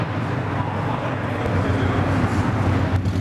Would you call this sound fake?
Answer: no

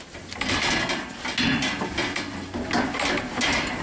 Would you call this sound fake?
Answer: no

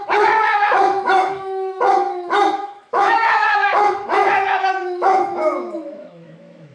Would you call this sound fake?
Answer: yes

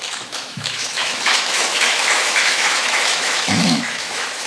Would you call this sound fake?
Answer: yes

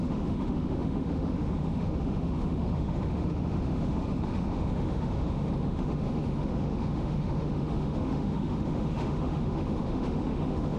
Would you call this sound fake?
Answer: yes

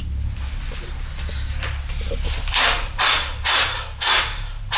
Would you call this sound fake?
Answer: no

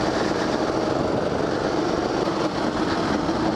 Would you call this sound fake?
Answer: no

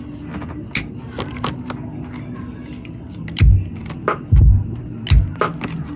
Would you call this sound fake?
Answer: no